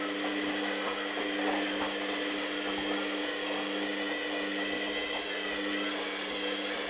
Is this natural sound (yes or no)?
yes